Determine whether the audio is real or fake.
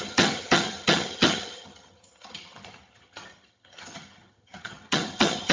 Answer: fake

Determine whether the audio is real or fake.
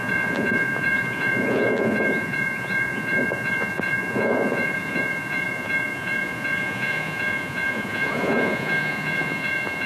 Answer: fake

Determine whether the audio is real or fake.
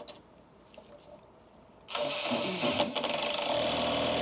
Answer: real